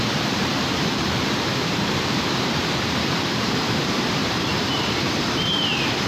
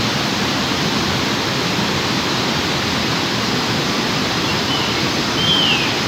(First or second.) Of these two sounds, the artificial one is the first